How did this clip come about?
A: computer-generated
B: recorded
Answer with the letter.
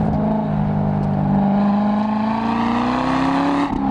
B